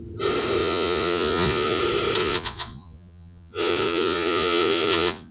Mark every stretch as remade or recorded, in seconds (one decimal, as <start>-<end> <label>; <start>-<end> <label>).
0.0-0.6 recorded; 0.6-1.8 remade; 1.8-2.2 recorded; 2.2-5.3 remade